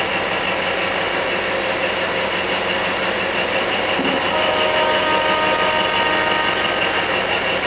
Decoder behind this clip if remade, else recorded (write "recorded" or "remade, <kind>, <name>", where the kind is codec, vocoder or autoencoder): recorded